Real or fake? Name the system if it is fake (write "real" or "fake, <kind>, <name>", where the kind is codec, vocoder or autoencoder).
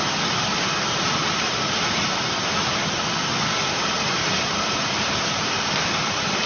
real